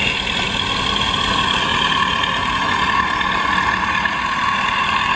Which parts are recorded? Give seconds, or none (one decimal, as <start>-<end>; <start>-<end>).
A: 1.7-4.8